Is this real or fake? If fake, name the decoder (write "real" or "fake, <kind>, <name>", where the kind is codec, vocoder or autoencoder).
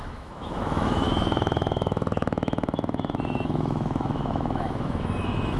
fake, autoencoder, DAC-VAE